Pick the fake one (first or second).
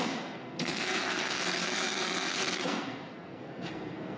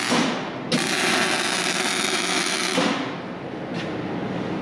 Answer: first